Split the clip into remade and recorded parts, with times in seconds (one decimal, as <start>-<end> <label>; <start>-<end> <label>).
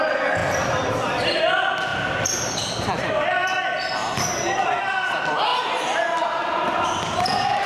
0.0-7.7 remade